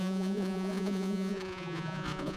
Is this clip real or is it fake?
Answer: fake